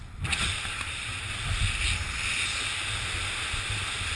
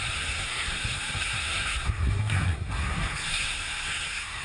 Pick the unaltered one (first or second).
first